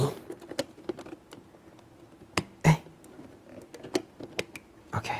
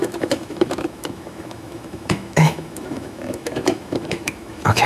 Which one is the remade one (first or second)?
second